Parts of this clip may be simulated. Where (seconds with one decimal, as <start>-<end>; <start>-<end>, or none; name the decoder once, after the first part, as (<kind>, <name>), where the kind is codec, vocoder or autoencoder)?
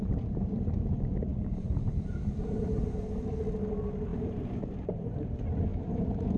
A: 1.3-3.4 (vocoder, BigVGAN v2); 4.1-5.0; 5.7-6.4